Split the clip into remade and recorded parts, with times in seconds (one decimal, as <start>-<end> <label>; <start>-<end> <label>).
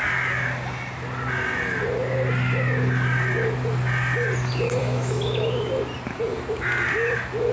0.0-4.8 recorded; 4.8-5.7 remade; 5.7-7.5 recorded